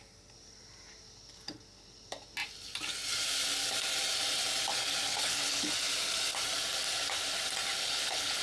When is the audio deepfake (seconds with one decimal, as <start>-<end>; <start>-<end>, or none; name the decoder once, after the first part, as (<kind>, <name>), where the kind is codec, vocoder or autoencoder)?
5.1-5.7 (codec, HILCodec); 7.8-8.4